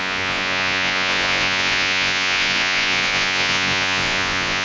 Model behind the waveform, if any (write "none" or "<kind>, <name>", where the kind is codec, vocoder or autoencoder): vocoder, Vocos